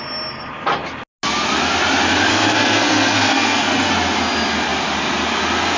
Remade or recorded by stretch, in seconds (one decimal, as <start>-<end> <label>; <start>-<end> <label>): 0.0-2.3 recorded; 2.3-3.9 remade; 3.9-5.8 recorded